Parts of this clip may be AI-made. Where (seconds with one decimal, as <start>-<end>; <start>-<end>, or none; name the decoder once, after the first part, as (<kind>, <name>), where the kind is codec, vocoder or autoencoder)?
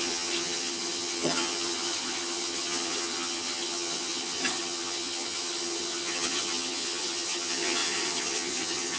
0.0-9.0 (vocoder, HiFi-GAN)